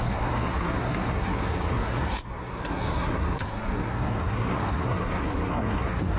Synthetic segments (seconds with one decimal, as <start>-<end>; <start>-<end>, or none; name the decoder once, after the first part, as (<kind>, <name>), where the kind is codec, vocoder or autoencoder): 0.0-6.2 (codec, SNAC)